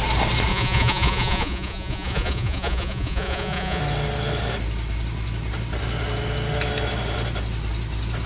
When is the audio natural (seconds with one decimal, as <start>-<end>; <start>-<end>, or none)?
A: 0.0-0.5; 3.8-8.3

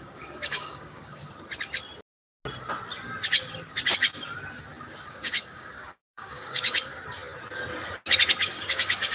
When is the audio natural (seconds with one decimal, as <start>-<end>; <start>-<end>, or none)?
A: 1.2-5.1; 7.0-8.3

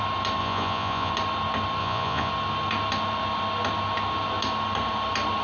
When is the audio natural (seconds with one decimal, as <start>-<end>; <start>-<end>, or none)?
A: 0.0-0.4; 1.1-1.8; 2.3-5.4

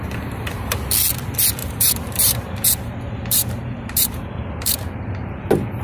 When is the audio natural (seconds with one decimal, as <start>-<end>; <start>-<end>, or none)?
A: 0.0-1.6; 5.1-5.8